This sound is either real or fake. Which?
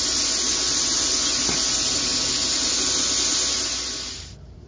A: real